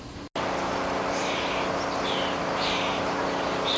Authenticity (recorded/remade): recorded